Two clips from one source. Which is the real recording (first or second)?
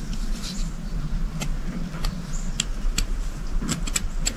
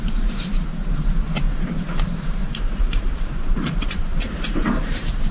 first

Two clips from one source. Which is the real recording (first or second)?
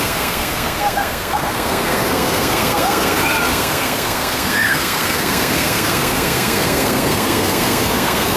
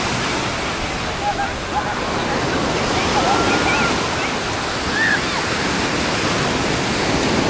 second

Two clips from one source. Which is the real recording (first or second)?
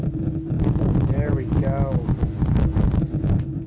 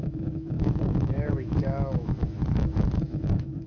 first